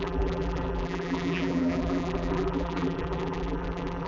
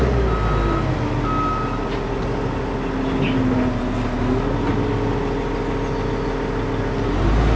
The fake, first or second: first